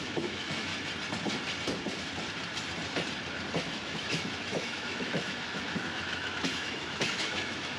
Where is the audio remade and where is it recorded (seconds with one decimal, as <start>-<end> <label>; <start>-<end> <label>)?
0.0-0.7 remade; 0.7-3.6 recorded; 3.6-7.8 remade